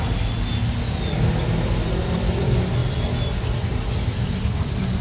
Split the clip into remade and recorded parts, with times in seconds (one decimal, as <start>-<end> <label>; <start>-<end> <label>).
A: 0.0-5.0 recorded